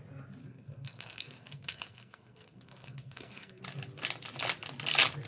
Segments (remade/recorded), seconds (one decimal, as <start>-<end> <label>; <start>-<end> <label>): 0.0-0.4 recorded; 0.4-3.6 remade; 3.6-5.3 recorded